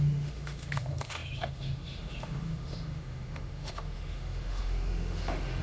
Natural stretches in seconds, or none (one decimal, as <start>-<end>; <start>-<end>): none